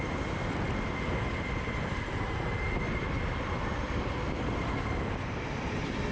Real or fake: fake